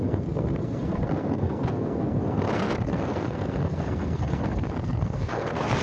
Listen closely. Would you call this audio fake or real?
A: fake